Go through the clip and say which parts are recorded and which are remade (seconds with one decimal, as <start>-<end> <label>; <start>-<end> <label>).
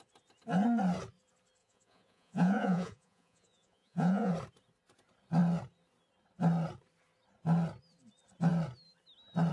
0.0-1.6 recorded; 1.6-4.3 remade; 4.3-9.5 recorded